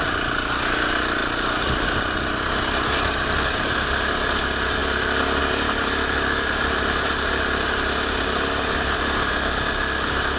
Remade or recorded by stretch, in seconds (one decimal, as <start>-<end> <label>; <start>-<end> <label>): 0.0-10.4 recorded